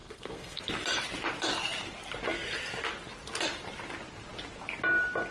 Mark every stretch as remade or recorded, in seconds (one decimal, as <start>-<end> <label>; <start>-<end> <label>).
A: 0.0-0.6 remade; 0.6-5.3 recorded